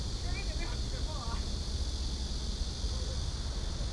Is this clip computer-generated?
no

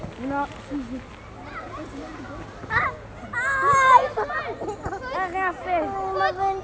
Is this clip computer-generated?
no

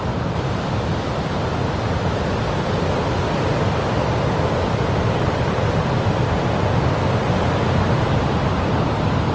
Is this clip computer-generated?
no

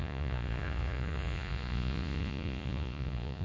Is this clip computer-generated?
yes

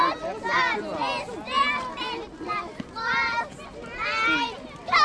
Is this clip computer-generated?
no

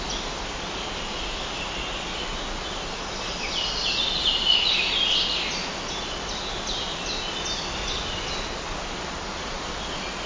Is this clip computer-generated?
no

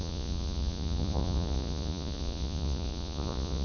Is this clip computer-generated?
yes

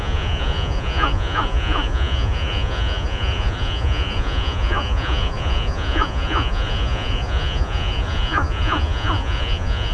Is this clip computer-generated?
yes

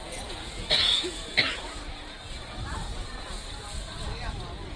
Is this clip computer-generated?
yes